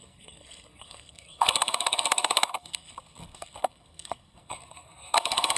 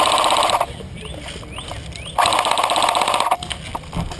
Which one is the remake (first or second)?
first